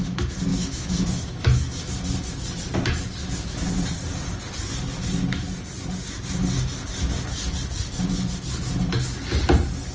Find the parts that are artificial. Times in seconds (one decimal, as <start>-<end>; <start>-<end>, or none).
0.5-1.8; 3.2-3.7

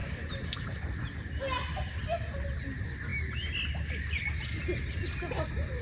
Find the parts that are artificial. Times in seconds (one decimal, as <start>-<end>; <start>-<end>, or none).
none

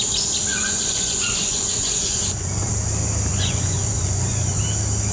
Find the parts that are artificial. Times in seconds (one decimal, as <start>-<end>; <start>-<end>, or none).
0.5-2.7; 3.3-4.6

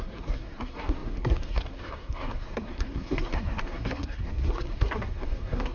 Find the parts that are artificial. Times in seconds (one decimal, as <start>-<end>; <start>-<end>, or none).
0.0-5.7

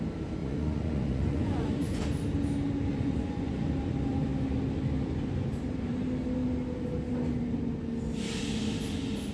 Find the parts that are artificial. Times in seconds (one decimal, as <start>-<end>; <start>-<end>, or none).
0.4-2.0; 2.9-3.5

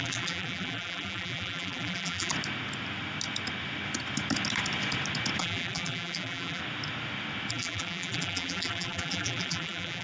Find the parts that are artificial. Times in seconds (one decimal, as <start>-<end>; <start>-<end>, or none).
0.0-2.3; 5.4-6.6; 7.5-10.0